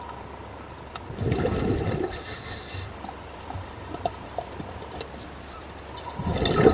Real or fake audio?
fake